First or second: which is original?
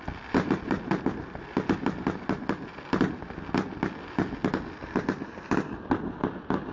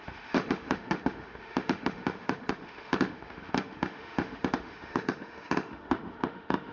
first